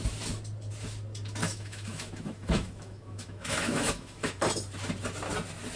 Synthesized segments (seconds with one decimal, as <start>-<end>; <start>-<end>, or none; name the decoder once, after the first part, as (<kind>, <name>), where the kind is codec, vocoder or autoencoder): 1.4-4.4 (autoencoder, DAC-VAE)